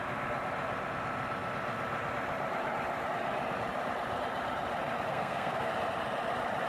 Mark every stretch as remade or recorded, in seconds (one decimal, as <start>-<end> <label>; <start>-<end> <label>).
0.0-5.1 recorded; 5.1-5.7 remade; 5.7-6.7 recorded